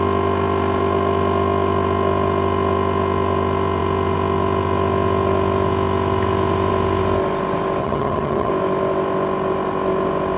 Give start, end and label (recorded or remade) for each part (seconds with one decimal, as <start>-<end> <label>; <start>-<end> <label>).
0.0-7.8 recorded; 7.8-8.5 remade; 8.5-10.4 recorded